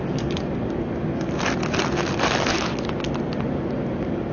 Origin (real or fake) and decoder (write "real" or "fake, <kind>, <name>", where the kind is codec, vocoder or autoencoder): real